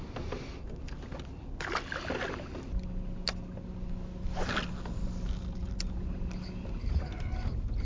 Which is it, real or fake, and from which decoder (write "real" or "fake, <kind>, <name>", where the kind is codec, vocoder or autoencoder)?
real